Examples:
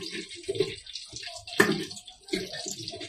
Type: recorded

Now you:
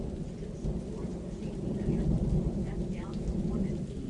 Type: recorded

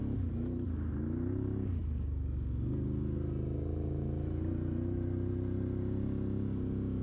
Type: recorded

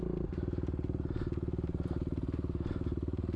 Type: recorded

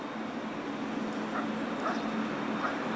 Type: recorded